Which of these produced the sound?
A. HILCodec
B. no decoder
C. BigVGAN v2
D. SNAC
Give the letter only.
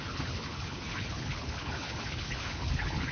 A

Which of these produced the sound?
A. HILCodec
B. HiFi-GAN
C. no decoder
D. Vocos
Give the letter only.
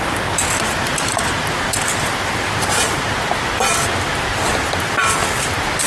C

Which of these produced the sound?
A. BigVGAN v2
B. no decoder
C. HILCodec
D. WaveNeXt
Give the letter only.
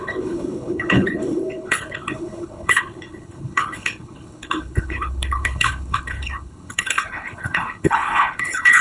C